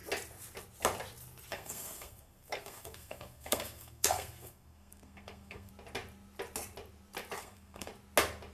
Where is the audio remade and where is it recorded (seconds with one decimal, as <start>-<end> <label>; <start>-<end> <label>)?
0.0-1.5 recorded; 1.5-5.7 remade; 5.7-7.4 recorded; 7.4-7.9 remade; 7.9-8.5 recorded